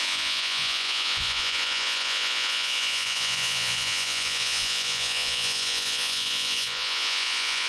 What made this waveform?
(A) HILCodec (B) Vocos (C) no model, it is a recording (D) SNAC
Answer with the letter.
B